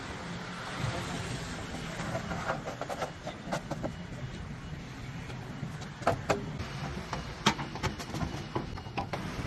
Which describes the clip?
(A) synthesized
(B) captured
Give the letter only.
B